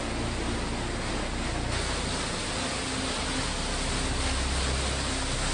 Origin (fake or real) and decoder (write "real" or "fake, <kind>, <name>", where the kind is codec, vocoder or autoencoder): real